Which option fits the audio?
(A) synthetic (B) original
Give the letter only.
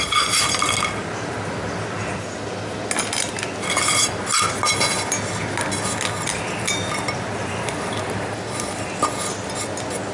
B